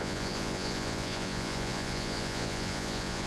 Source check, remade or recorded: remade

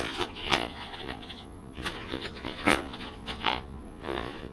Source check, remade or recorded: remade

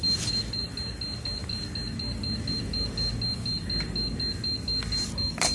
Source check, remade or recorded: recorded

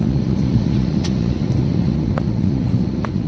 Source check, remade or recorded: remade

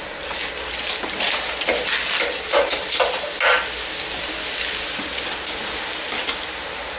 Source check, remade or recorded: recorded